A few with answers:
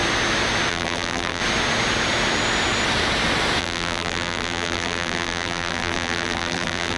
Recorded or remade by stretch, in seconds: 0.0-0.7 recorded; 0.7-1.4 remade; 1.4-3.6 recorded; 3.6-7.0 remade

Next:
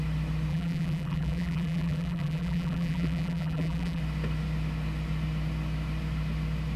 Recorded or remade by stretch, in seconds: 0.0-0.5 recorded; 0.5-4.0 remade; 4.0-6.8 recorded

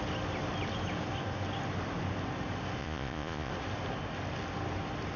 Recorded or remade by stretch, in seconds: 0.0-2.8 recorded; 2.8-3.5 remade; 3.5-5.2 recorded

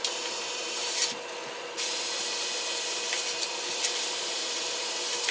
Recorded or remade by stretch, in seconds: 0.0-1.0 remade; 1.0-4.2 recorded; 4.2-5.3 remade

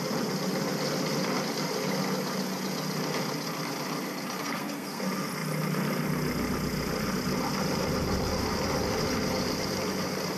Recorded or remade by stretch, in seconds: 0.0-4.4 recorded; 4.4-5.0 remade; 5.0-10.4 recorded

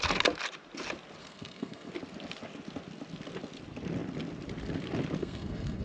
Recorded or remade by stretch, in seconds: 0.0-1.2 recorded; 1.2-1.9 remade; 1.9-5.2 recorded; 5.2-5.8 remade